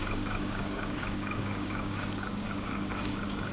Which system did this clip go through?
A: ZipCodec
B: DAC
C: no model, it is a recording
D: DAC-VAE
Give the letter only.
B